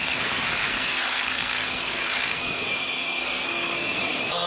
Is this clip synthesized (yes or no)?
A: yes